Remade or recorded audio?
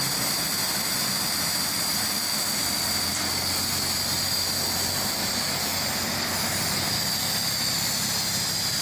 recorded